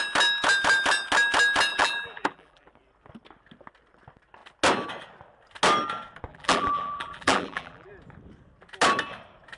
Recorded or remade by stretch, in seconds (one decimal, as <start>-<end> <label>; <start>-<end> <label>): 0.0-1.7 recorded; 1.7-2.7 remade; 2.7-6.3 recorded; 6.3-7.9 remade; 7.9-9.6 recorded